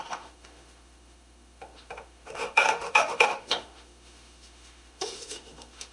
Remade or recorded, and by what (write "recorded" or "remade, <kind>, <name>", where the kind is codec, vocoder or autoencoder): remade, autoencoder, DAC-VAE